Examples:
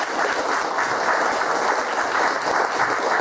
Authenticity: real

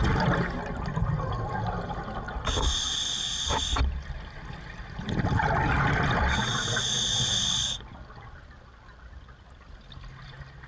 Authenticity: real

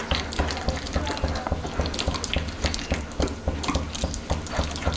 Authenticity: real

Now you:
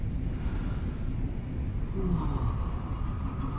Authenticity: real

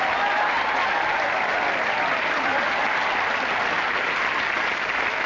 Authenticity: real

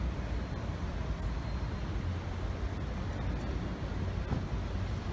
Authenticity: real